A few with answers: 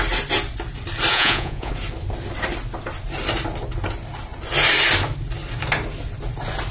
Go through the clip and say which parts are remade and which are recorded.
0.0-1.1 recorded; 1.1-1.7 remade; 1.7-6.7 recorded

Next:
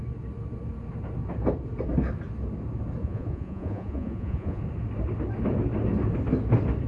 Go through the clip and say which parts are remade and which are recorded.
0.0-3.0 recorded; 3.0-4.6 remade; 4.6-6.9 recorded

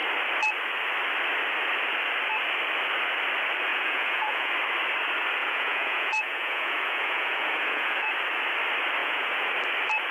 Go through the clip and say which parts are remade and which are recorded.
0.0-3.7 recorded; 3.7-4.5 remade; 4.5-5.4 recorded; 5.4-8.1 remade; 8.1-9.0 recorded; 9.0-9.5 remade; 9.5-10.1 recorded

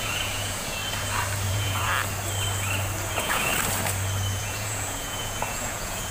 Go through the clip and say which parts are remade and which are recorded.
0.0-0.8 remade; 0.8-1.5 recorded; 1.5-1.9 remade; 1.9-3.1 recorded; 3.1-3.5 remade; 3.5-4.4 recorded; 4.4-6.1 remade

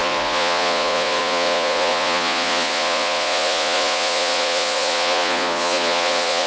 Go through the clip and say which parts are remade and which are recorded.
0.0-6.5 remade